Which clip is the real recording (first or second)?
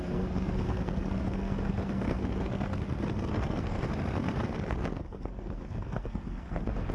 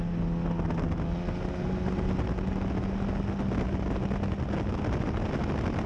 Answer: second